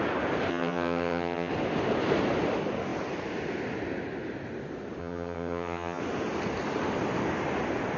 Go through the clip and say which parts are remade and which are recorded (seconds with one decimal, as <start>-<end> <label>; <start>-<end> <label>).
0.0-0.5 recorded; 0.5-1.5 remade; 1.5-5.0 recorded; 5.0-6.0 remade; 6.0-8.0 recorded

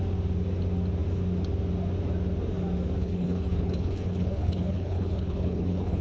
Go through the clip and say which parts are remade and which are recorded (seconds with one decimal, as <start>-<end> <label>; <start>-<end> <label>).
0.0-3.0 recorded; 3.0-6.0 remade

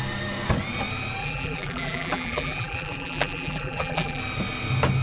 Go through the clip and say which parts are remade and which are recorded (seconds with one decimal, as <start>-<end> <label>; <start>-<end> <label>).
0.0-1.2 recorded; 1.2-4.2 remade; 4.2-5.0 recorded

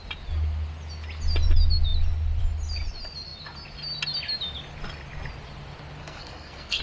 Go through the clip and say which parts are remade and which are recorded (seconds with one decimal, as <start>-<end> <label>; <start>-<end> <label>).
0.0-6.0 recorded; 6.0-6.8 remade

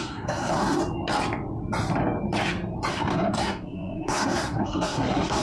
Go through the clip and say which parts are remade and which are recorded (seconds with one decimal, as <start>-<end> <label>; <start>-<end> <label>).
0.0-0.8 remade; 0.8-2.9 recorded; 2.9-5.4 remade